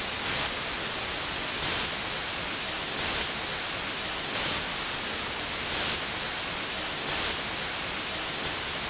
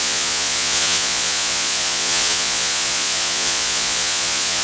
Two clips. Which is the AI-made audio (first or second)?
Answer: second